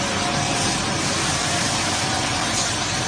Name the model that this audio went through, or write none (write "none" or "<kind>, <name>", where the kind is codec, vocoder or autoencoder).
none